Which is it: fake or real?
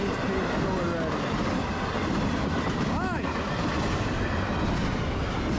real